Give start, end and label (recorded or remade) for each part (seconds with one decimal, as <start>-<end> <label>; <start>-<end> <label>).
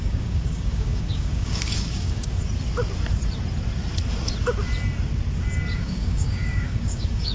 0.0-2.4 remade; 2.4-5.7 recorded; 5.7-7.3 remade